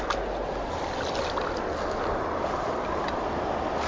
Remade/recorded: recorded